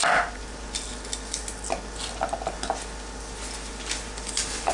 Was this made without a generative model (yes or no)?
yes